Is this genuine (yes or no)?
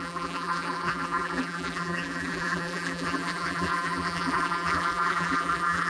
no